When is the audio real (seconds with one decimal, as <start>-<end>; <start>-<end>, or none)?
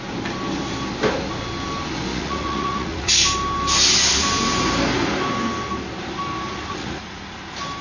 0.0-2.1; 3.1-6.5; 7.2-7.8